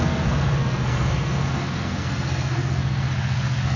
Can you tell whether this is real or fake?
fake